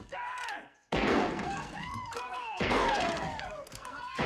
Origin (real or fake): fake